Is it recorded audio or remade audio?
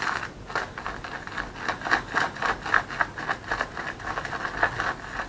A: recorded